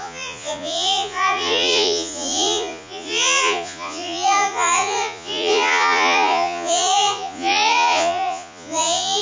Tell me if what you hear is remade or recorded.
remade